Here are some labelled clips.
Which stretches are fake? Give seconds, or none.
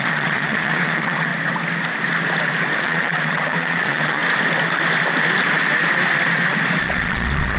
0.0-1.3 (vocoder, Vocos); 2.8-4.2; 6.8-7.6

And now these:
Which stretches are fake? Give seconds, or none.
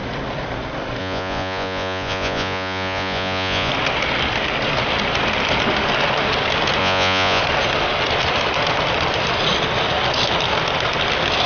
1.0-3.7 (vocoder, Vocos); 6.8-7.4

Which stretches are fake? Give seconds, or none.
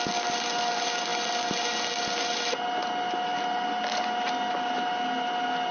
none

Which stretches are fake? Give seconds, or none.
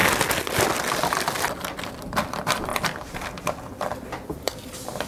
none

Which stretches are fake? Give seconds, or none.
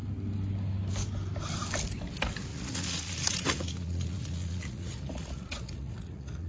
2.5-6.5 (vocoder, Vocos)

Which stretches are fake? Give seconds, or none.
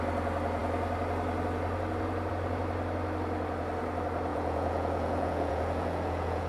4.3-6.5 (vocoder, Vocos)